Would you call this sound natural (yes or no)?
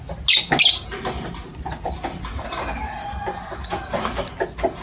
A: yes